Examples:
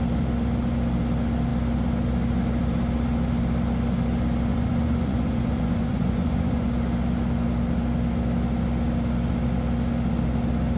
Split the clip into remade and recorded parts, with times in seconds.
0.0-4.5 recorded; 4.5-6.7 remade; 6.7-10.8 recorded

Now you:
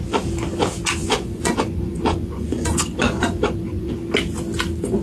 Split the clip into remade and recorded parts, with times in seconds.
0.0-1.0 recorded; 1.0-4.0 remade; 4.0-5.0 recorded

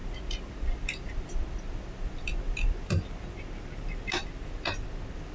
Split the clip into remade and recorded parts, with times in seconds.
0.0-5.3 recorded

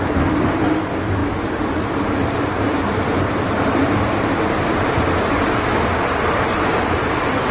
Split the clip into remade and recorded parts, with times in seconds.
0.0-7.5 remade

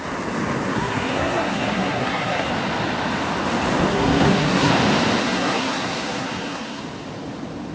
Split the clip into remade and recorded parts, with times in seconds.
0.0-0.7 recorded; 0.7-2.5 remade; 2.5-3.9 recorded; 3.9-4.7 remade; 4.7-5.2 recorded; 5.2-6.8 remade; 6.8-7.7 recorded

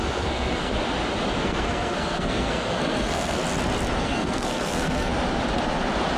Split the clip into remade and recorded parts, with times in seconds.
0.0-0.7 remade; 0.7-1.4 recorded; 1.4-3.4 remade; 3.4-4.0 recorded; 4.0-5.1 remade; 5.1-6.2 recorded